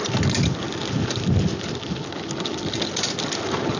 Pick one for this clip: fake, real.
real